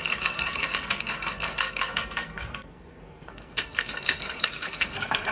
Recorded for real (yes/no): no